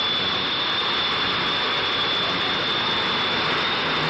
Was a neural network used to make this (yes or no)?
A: no